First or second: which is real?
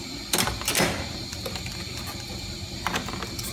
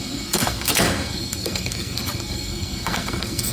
first